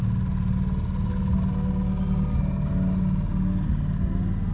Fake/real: real